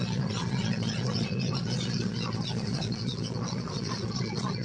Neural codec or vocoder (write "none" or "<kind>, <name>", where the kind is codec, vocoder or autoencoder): vocoder, Vocos